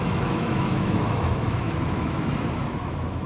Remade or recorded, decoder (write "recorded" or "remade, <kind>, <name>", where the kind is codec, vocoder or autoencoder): remade, autoencoder, DAC-VAE